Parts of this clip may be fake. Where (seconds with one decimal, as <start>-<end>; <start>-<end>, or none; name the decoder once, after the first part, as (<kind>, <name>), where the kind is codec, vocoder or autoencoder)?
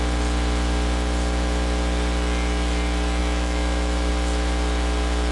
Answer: 3.2-4.1 (autoencoder, DAC-VAE)